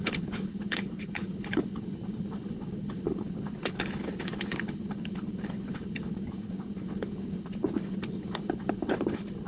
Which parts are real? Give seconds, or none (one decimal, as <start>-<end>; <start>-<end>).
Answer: none